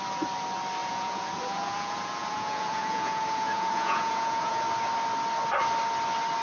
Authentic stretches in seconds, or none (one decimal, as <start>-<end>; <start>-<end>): 0.0-0.8; 4.6-6.4